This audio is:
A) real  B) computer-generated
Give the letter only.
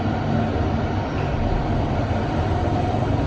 B